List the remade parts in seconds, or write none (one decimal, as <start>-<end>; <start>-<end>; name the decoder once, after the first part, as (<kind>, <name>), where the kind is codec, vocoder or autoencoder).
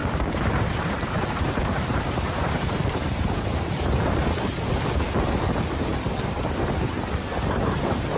0.0-4.3 (vocoder, BigVGAN v2); 5.9-6.4